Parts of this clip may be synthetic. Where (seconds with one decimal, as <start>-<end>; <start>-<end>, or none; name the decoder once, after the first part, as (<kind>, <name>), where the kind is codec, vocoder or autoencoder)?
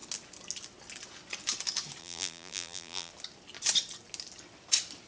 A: 2.0-3.1 (vocoder, BigVGAN v2)